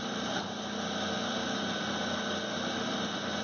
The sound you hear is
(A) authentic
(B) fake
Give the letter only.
A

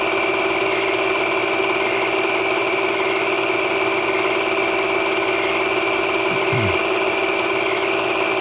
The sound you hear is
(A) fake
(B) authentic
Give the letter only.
B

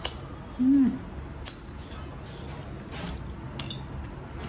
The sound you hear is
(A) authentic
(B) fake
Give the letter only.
A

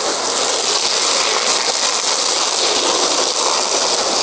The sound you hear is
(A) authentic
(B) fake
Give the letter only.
A